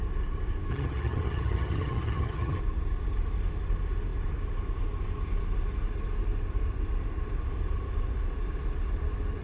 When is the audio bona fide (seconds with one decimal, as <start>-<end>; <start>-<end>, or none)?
0.0-0.7; 2.6-9.4